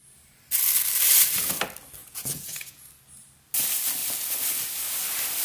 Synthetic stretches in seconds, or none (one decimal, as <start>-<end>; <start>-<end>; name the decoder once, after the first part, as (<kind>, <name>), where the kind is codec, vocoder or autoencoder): 2.0-2.9 (vocoder, Vocos)